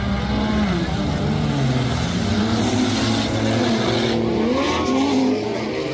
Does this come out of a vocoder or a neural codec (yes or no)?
no